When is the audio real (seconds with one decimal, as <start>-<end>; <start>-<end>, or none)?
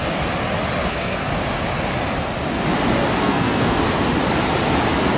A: 0.0-0.9; 1.3-3.2; 3.8-5.2